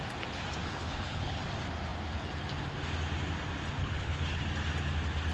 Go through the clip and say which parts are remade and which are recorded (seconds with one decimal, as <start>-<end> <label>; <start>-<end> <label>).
0.0-0.6 recorded; 0.6-1.4 remade; 1.4-3.8 recorded; 3.8-4.4 remade; 4.4-5.3 recorded